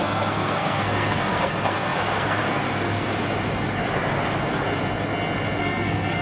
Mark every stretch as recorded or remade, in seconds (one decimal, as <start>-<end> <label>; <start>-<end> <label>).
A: 0.0-3.1 remade; 3.1-5.6 recorded; 5.6-6.2 remade